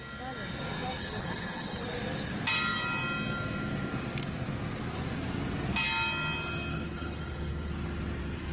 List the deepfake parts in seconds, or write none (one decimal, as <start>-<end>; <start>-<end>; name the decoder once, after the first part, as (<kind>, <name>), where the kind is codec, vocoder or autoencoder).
1.0-1.8 (codec, HILCodec); 6.7-7.7